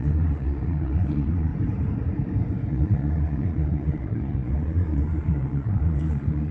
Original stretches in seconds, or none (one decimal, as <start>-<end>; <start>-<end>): 1.5-2.7